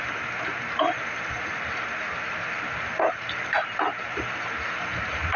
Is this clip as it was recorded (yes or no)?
no